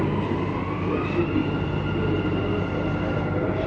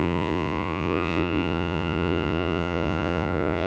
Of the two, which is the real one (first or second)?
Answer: first